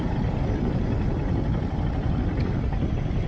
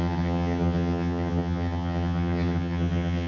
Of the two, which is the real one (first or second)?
first